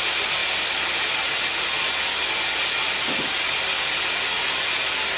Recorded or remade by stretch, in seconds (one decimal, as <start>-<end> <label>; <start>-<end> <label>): 0.0-5.2 recorded